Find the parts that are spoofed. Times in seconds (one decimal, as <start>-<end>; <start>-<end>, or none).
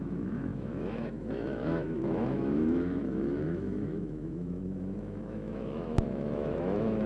0.0-7.1